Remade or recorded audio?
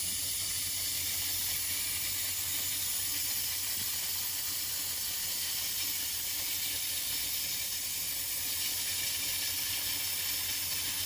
recorded